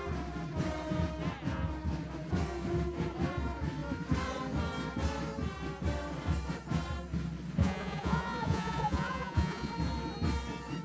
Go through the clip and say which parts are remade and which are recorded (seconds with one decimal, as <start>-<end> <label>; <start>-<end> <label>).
0.0-7.6 recorded; 7.6-9.7 remade; 9.7-10.8 recorded